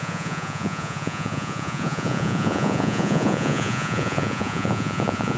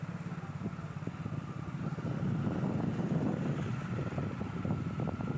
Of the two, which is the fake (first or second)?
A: first